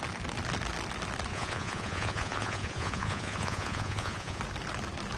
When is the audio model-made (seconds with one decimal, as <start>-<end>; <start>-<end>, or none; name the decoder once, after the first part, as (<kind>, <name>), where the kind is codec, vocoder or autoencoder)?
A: 1.3-4.4 (vocoder, Vocos)